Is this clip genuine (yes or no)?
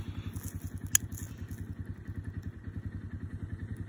yes